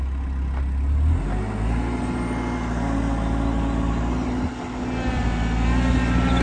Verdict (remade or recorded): recorded